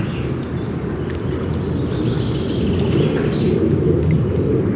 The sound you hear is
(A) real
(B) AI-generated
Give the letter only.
A